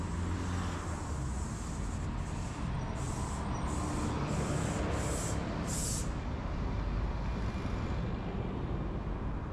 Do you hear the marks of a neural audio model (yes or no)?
no